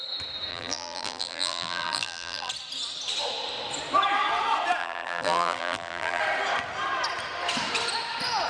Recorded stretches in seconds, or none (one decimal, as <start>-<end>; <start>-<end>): 0.0-0.5; 2.5-4.8; 6.2-8.5